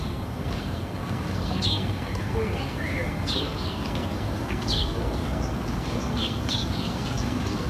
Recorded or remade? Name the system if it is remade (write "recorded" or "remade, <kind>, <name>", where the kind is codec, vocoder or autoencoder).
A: remade, codec, SNAC